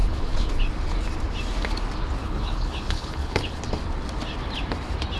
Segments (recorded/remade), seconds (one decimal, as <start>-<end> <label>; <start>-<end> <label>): 0.0-0.5 remade; 0.5-2.2 recorded; 2.2-3.6 remade; 3.6-5.2 recorded